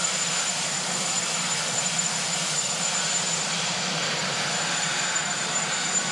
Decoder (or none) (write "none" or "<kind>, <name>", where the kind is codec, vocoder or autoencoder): vocoder, BigVGAN v2